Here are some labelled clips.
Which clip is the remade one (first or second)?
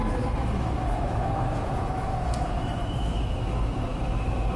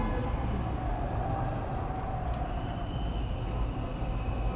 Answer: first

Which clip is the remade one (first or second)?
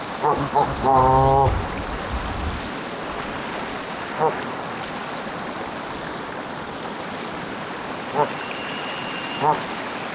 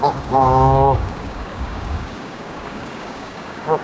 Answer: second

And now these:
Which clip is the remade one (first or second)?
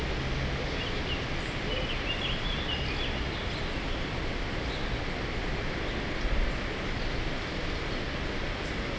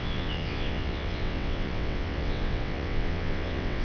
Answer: second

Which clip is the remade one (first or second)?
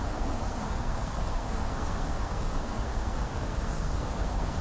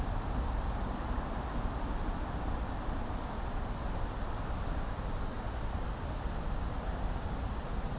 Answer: first